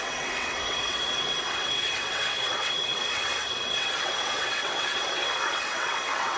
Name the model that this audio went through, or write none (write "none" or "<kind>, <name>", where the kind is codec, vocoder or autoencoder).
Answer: vocoder, WaveNeXt